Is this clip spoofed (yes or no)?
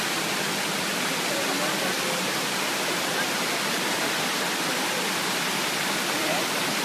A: no